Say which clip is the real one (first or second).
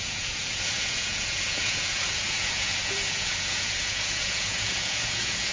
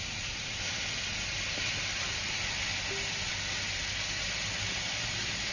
second